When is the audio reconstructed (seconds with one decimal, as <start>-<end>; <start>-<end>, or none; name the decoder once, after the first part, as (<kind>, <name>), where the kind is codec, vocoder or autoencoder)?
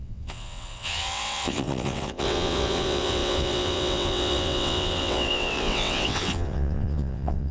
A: 0.0-7.5 (vocoder, WaveNeXt)